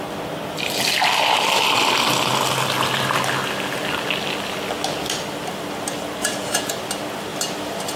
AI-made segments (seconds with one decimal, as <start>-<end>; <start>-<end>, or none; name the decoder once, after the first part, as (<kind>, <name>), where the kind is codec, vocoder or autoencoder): 6.2-6.7 (vocoder, Vocos)